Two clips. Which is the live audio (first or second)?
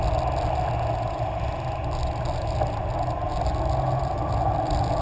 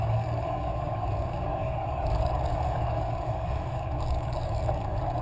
first